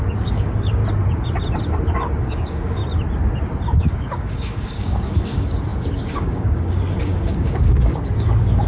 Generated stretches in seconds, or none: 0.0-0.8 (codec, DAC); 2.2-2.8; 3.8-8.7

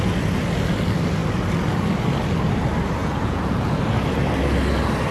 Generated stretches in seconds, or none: 3.0-3.8 (vocoder, Vocos)

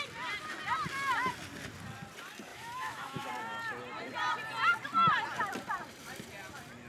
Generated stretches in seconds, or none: 2.5-3.3 (autoencoder, DAC-VAE)